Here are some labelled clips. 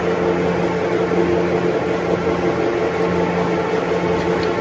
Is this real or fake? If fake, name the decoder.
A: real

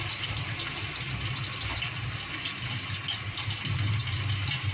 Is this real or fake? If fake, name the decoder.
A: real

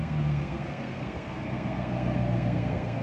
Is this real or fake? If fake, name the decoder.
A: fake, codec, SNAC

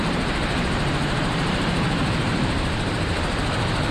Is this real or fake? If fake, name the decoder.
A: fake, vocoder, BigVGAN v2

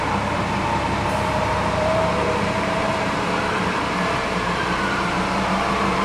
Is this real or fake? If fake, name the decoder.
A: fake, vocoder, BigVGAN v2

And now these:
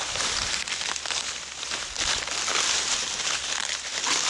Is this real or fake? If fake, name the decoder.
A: real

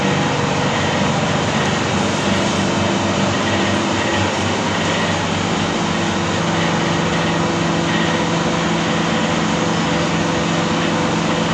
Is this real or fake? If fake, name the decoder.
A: real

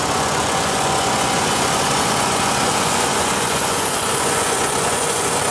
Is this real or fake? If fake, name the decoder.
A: fake, vocoder, Vocos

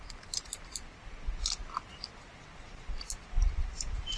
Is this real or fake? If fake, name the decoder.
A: real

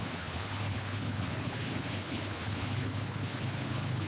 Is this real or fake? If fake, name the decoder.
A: fake, codec, HILCodec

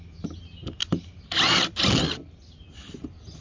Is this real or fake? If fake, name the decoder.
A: real